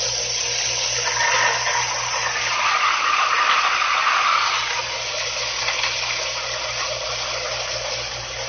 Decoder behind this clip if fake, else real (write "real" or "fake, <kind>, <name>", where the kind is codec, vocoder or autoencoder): real